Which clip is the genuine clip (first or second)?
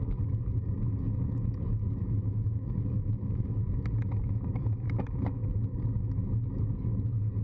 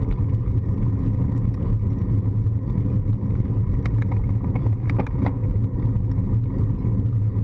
second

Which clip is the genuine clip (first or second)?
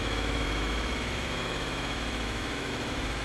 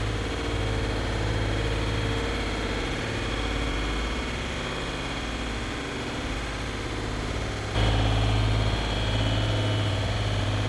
second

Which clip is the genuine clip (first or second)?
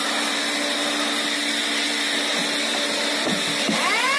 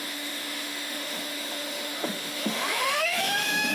first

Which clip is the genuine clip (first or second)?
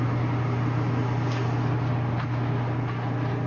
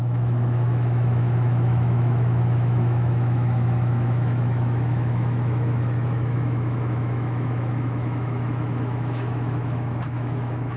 first